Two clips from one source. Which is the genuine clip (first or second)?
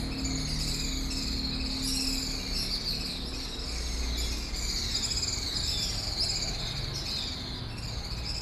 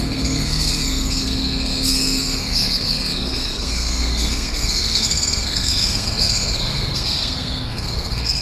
first